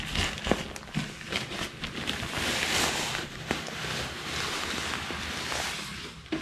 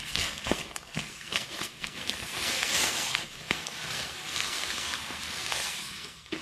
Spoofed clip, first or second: second